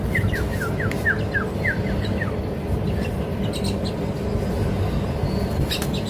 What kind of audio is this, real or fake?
real